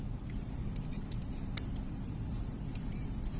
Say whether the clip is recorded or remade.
remade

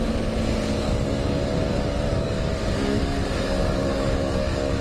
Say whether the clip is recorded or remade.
remade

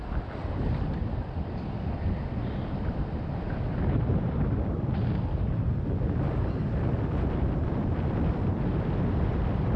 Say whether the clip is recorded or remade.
recorded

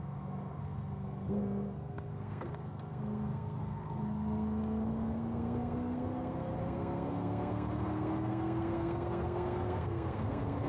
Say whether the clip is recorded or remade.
remade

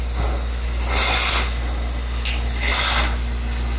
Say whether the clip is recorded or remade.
recorded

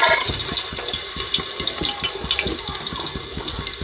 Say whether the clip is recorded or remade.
recorded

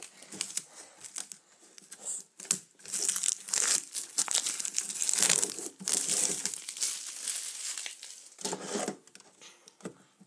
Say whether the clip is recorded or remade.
recorded